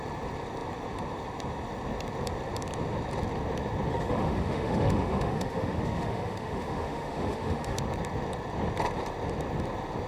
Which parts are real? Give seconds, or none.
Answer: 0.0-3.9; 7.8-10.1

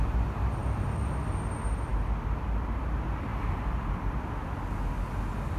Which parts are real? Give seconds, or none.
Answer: 0.0-5.6

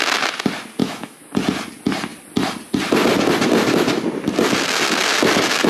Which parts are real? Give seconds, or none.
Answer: 0.0-0.8; 1.3-5.7